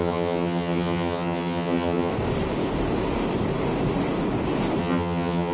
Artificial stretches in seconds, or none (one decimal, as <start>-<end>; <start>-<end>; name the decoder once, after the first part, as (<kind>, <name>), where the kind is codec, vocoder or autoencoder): 0.0-2.1 (vocoder, HiFi-GAN); 4.8-5.5